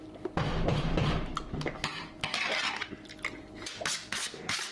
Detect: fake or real real